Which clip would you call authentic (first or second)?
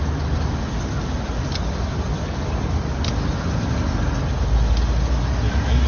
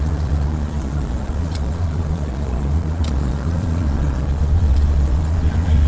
first